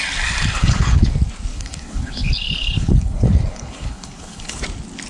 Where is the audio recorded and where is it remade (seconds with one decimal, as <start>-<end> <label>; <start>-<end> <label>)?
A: 0.0-0.6 recorded; 0.6-1.1 remade; 1.1-1.5 recorded; 1.5-4.6 remade; 4.6-5.1 recorded